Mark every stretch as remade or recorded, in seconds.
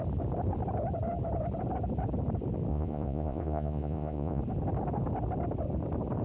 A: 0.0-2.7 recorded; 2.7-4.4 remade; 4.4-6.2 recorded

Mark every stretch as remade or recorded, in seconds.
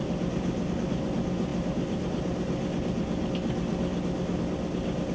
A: 0.0-5.1 recorded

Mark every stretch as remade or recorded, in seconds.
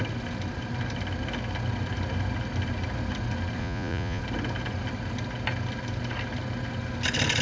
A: 0.0-3.6 recorded; 3.6-4.2 remade; 4.2-7.4 recorded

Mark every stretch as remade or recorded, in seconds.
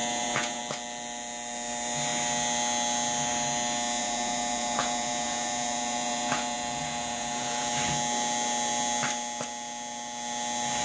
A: 0.0-0.6 remade; 0.6-4.0 recorded; 4.0-7.7 remade; 7.7-10.8 recorded